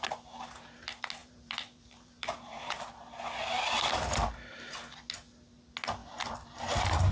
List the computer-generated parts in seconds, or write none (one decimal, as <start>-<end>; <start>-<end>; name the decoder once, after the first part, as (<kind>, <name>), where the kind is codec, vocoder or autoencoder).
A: 1.2-2.9 (vocoder, BigVGAN v2); 6.0-6.6